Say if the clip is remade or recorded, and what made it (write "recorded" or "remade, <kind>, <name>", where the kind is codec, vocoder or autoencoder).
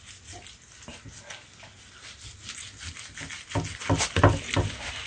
recorded